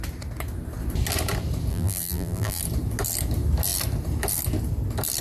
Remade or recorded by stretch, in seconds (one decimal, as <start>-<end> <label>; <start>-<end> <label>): 0.0-1.7 recorded; 1.7-2.6 remade; 2.6-5.2 recorded